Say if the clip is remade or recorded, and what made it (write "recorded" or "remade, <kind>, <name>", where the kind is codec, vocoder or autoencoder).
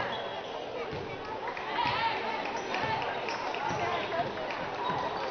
recorded